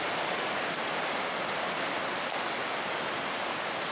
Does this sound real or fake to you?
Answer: real